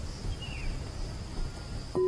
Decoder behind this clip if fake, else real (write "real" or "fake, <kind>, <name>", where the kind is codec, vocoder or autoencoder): real